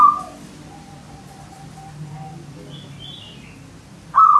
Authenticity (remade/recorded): recorded